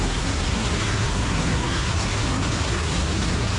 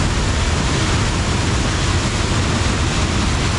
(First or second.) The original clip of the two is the second